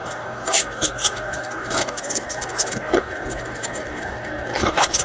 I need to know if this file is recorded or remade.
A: remade